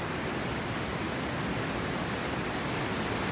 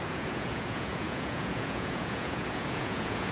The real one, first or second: first